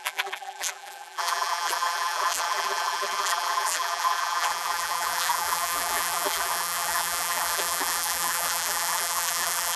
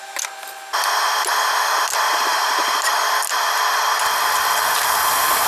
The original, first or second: second